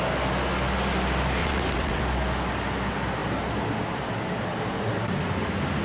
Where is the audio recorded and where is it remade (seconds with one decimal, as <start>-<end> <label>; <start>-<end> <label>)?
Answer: 0.0-1.4 recorded; 1.4-2.0 remade; 2.0-5.8 recorded